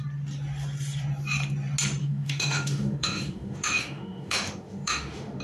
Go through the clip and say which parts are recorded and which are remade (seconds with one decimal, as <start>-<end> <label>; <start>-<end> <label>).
0.0-2.0 recorded; 2.0-5.4 remade